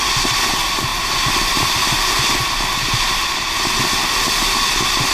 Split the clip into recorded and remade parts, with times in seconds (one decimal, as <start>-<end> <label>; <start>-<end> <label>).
0.0-5.1 recorded